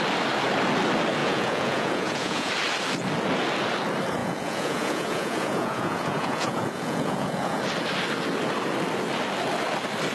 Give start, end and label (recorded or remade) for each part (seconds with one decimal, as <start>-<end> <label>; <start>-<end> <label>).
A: 0.0-1.2 recorded; 1.2-2.5 remade; 2.5-4.2 recorded; 4.2-7.6 remade; 7.6-10.1 recorded